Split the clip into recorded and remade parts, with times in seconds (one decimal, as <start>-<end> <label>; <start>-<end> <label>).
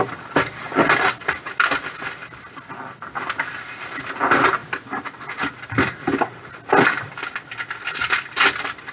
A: 0.0-8.9 recorded